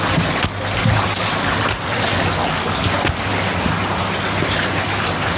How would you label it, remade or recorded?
recorded